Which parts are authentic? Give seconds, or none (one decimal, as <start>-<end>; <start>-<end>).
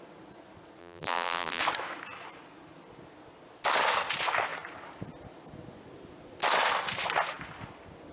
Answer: 0.0-0.8; 1.6-8.1